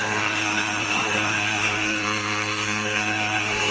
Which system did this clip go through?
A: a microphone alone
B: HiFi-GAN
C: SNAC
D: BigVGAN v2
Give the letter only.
C